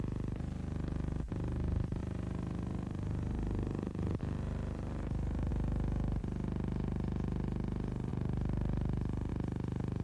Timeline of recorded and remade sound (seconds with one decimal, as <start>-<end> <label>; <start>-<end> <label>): 0.0-2.0 recorded; 2.0-5.5 remade; 5.5-10.0 recorded